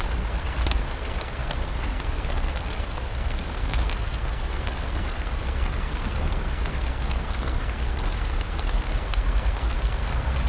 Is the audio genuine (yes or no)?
no